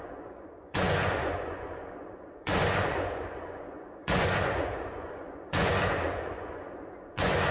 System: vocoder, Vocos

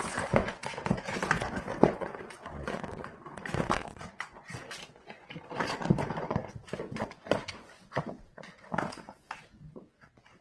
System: vocoder, Vocos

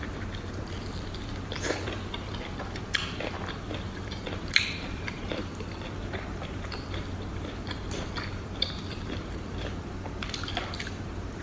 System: vocoder, BigVGAN v2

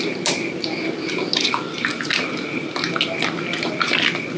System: none